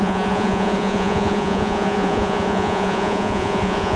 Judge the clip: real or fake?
fake